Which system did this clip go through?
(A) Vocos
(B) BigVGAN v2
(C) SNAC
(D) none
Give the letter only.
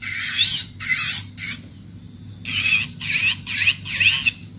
D